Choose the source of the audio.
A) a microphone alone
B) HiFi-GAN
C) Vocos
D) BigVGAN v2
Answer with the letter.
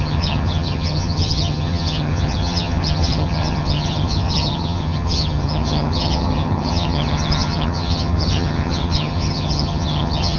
B